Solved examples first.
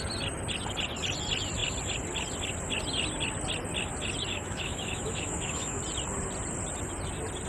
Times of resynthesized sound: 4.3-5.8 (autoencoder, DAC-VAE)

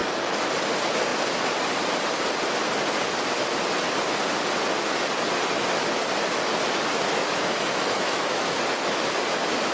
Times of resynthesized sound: 0.0-0.5 (autoencoder, DAC-VAE); 7.2-9.1

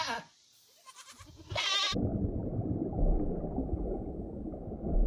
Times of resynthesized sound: none